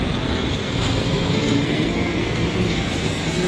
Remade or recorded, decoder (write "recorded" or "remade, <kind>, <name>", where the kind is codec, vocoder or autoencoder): remade, codec, SNAC